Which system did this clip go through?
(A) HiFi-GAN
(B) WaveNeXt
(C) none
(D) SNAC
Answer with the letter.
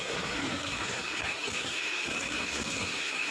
D